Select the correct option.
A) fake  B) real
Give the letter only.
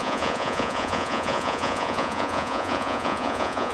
A